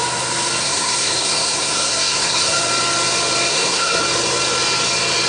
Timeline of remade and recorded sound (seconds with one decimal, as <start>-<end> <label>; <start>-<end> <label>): 0.0-0.6 recorded; 0.6-2.6 remade; 2.6-3.5 recorded; 3.5-4.0 remade; 4.0-5.3 recorded